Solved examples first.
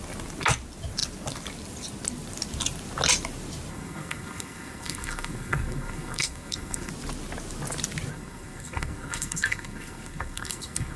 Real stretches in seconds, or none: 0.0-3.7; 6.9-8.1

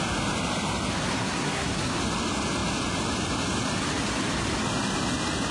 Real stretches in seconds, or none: 0.0-1.2; 2.0-5.5

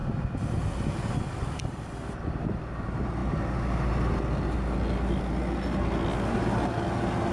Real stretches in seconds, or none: 0.0-7.3